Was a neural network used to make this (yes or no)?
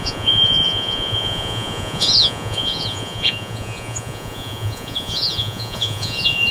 yes